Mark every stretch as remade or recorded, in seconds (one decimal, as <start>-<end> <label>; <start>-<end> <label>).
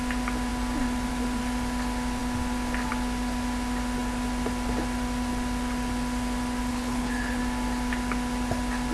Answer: 0.0-6.7 recorded; 6.7-7.4 remade; 7.4-8.9 recorded